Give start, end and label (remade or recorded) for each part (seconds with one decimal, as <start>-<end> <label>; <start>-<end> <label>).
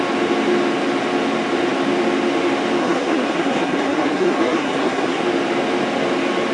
0.0-2.8 recorded; 2.8-5.2 remade; 5.2-6.5 recorded